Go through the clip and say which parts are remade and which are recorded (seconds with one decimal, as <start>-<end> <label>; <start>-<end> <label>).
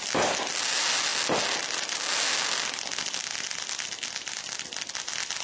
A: 0.0-5.4 recorded